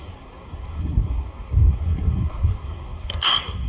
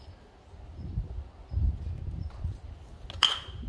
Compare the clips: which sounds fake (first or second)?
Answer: first